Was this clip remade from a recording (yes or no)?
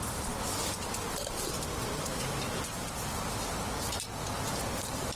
no